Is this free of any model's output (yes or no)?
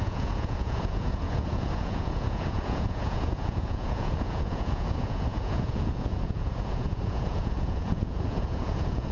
no